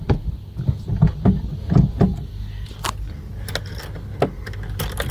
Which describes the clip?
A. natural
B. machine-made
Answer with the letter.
A